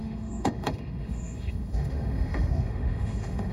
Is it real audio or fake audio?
fake